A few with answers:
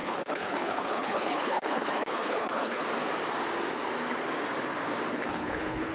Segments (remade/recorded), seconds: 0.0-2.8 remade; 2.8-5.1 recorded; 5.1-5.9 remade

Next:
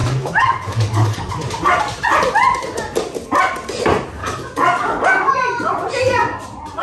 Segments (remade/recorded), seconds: 0.0-1.3 remade; 1.3-4.2 recorded; 4.2-5.3 remade; 5.3-6.8 recorded

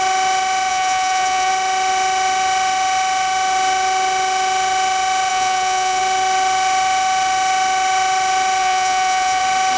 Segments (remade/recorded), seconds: 0.0-0.7 recorded; 0.7-1.5 remade; 1.5-5.3 recorded; 5.3-6.0 remade; 6.0-8.6 recorded; 8.6-9.4 remade; 9.4-9.8 recorded

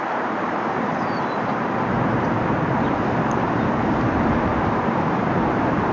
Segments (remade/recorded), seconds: 0.0-4.5 remade; 4.5-5.3 recorded; 5.3-5.9 remade

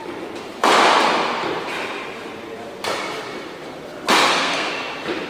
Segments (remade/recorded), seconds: 0.0-4.2 recorded; 4.2-4.7 remade; 4.7-5.3 recorded